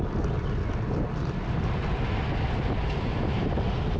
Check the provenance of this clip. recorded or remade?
recorded